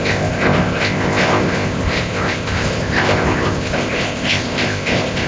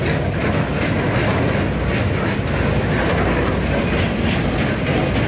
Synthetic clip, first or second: first